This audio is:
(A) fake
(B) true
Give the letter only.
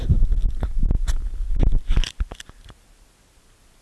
B